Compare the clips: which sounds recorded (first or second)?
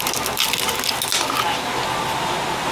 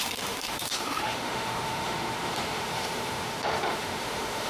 first